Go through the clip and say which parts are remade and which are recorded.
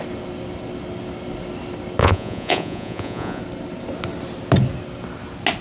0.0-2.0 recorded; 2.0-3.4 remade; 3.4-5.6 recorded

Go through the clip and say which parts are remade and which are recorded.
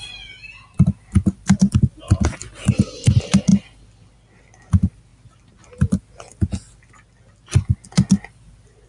0.0-8.9 recorded